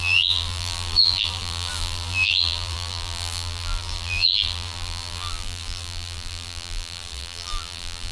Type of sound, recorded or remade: remade